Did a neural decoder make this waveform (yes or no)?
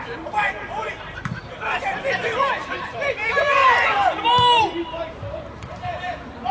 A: yes